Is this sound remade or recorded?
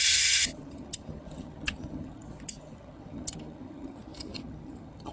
remade